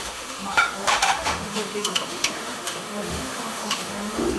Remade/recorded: remade